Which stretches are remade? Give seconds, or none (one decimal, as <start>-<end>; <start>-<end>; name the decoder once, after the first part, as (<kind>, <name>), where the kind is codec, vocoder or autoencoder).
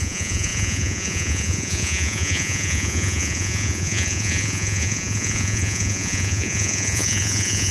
0.0-7.7 (vocoder, Vocos)